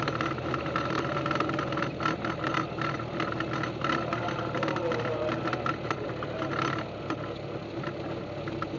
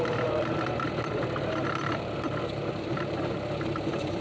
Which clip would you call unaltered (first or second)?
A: first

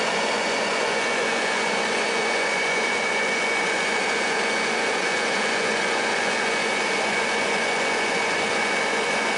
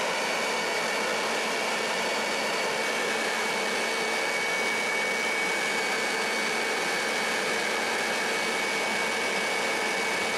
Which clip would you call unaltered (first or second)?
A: second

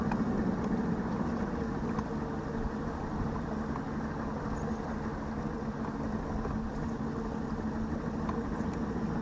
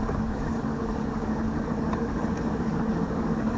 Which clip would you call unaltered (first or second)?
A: first